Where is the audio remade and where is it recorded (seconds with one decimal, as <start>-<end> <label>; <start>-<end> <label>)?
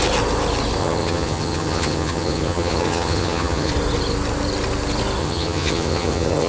0.0-0.8 recorded; 0.8-3.7 remade; 3.7-5.2 recorded; 5.2-6.5 remade